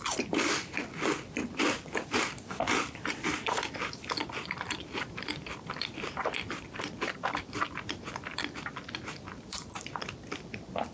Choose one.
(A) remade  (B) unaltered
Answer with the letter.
A